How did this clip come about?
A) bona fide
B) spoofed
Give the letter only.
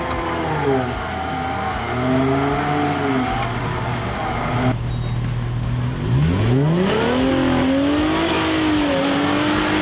A